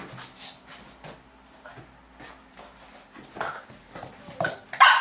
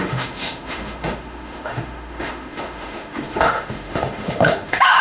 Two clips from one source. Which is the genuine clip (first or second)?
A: first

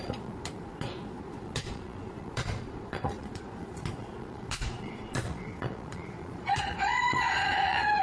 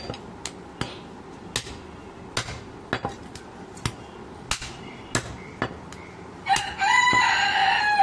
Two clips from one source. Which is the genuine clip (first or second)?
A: second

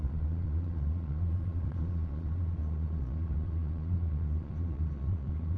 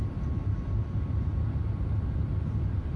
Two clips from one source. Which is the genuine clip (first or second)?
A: second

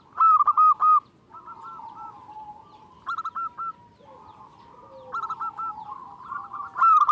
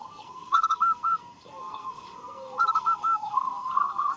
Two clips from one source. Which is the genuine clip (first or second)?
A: first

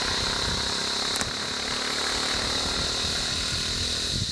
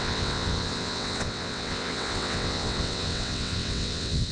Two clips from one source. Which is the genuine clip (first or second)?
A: first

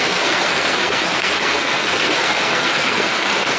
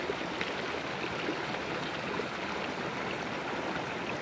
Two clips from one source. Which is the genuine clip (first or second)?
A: second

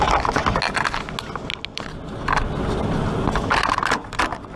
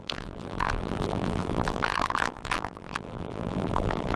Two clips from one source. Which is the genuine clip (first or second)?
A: first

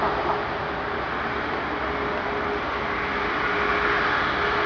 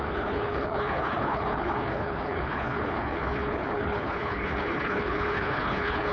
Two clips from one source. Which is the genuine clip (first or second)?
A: first